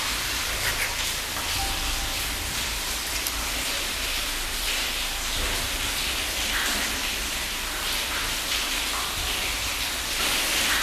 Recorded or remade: remade